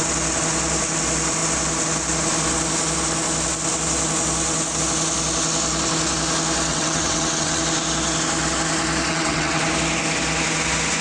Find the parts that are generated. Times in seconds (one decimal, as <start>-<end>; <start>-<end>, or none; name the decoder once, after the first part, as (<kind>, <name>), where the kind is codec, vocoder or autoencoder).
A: 6.7-7.6 (vocoder, WaveNeXt); 9.1-9.6